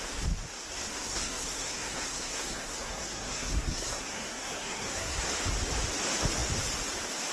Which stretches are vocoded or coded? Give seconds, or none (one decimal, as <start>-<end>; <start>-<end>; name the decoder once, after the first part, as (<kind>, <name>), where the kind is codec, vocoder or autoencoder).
0.9-5.3 (codec, SNAC)